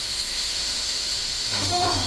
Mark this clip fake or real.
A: fake